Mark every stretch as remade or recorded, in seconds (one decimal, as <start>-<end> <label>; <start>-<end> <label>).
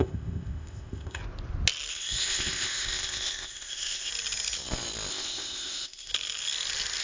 0.0-1.2 remade; 1.2-1.9 recorded; 1.9-4.1 remade; 4.1-5.1 recorded; 5.1-6.1 remade; 6.1-7.0 recorded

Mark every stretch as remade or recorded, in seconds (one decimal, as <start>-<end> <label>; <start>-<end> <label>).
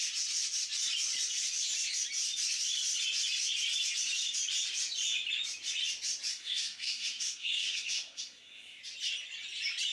0.0-6.3 recorded; 6.3-8.8 remade; 8.8-9.9 recorded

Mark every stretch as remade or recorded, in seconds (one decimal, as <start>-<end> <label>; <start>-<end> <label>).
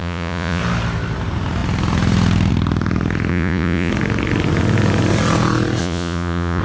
0.0-0.6 remade; 0.6-3.3 recorded; 3.3-3.9 remade; 3.9-5.8 recorded; 5.8-6.6 remade